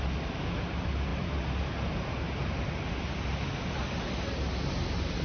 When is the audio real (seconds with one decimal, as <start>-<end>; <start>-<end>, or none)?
0.0-5.2